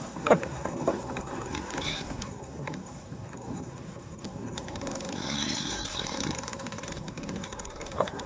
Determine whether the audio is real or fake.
fake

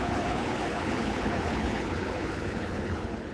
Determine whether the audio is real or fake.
fake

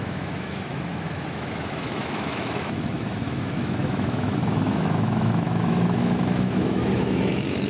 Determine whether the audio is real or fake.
fake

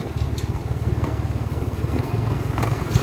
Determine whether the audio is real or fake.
fake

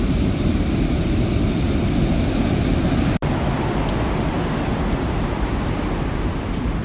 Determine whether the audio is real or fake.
real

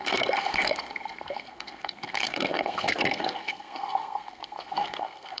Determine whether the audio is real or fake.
fake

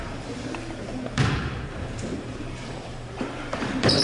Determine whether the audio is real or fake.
fake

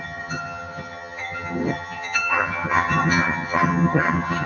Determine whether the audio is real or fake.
fake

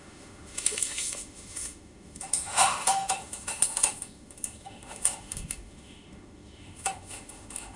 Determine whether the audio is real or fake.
fake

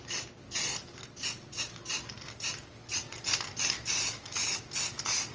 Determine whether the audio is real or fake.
real